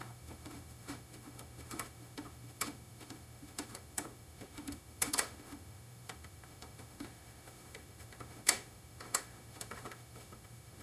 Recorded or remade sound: remade